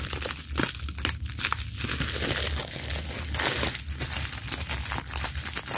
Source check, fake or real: real